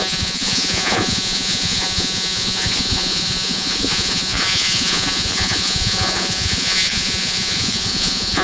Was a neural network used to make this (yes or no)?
yes